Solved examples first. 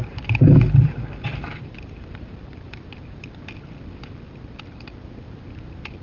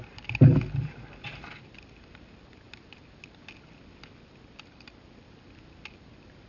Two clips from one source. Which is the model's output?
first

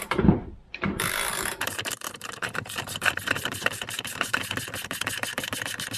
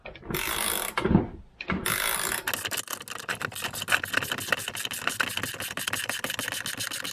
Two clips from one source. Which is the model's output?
first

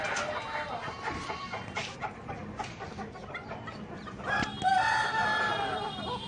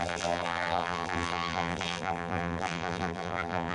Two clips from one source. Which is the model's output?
second